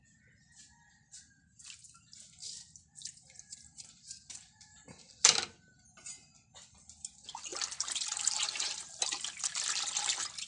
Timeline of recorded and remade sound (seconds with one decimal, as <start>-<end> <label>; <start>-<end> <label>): 0.0-7.5 recorded; 7.5-9.0 remade; 9.0-10.5 recorded